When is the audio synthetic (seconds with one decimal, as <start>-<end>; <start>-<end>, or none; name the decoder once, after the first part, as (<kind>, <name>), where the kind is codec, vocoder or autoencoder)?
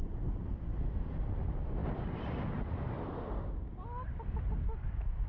none